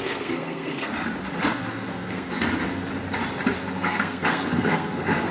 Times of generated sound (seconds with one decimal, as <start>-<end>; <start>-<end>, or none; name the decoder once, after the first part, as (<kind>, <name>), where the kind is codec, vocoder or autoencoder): 0.0-0.9 (codec, SNAC); 1.5-2.9; 3.6-5.3